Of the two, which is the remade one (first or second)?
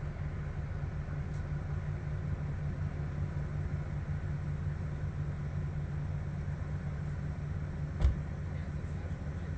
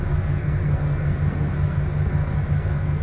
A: second